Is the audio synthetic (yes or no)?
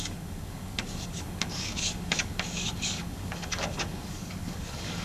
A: yes